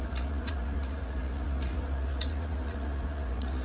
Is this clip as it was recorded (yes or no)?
no